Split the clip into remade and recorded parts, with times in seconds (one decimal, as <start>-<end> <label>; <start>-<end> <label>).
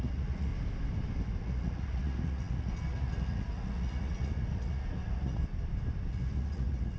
0.0-0.5 remade; 0.5-1.4 recorded; 1.4-5.4 remade; 5.4-6.1 recorded; 6.1-7.0 remade